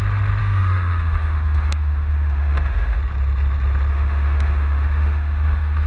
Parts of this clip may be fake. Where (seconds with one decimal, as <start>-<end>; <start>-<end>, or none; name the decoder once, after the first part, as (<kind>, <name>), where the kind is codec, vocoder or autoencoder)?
0.4-3.0 (autoencoder, DAC-VAE); 3.9-5.9